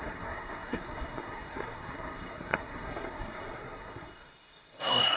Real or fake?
fake